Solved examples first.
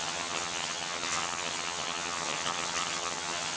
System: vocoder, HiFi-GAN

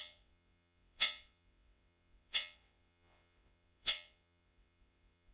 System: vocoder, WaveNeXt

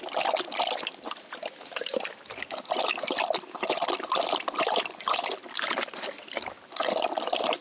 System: none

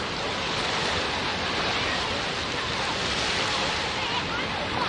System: none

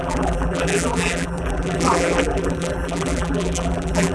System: vocoder, BigVGAN v2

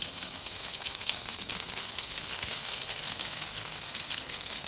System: codec, SNAC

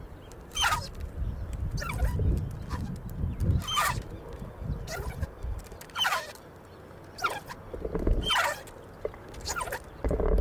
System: none